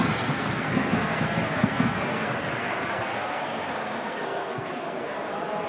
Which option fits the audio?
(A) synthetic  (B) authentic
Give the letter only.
A